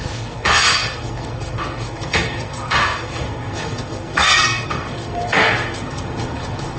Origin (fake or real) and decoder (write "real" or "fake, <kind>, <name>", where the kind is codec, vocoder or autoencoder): fake, codec, SNAC